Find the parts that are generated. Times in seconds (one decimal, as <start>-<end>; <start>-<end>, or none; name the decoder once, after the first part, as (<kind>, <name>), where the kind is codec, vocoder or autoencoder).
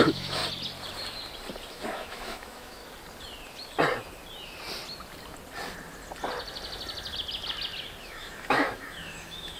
0.0-0.4 (autoencoder, DAC-VAE); 1.7-2.8; 8.0-9.6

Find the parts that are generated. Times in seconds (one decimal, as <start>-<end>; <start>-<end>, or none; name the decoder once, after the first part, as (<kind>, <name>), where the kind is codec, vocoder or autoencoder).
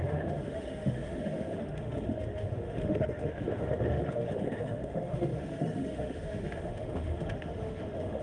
0.0-8.2 (autoencoder, DAC-VAE)